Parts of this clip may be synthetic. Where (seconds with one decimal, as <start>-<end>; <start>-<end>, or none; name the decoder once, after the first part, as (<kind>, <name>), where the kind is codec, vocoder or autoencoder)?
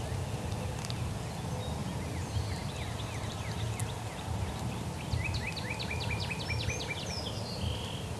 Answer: none